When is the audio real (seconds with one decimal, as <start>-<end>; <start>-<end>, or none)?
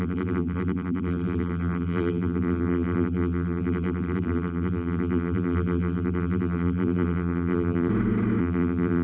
7.9-8.4